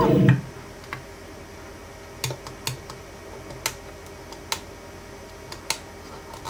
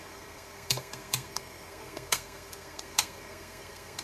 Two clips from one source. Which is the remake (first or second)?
second